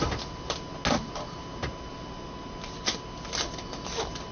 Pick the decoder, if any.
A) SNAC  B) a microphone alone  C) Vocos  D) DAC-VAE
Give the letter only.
B